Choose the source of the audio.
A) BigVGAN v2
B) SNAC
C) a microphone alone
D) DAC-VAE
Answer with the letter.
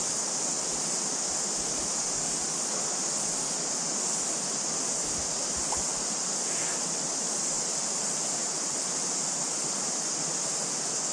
C